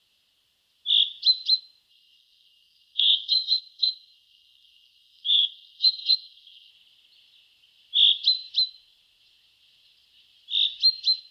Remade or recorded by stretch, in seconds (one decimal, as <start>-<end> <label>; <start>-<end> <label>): 0.0-1.9 recorded; 1.9-6.7 remade; 6.7-11.3 recorded